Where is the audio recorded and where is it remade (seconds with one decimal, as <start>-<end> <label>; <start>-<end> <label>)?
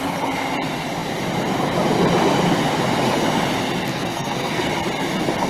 0.0-3.9 recorded; 3.9-4.7 remade; 4.7-5.5 recorded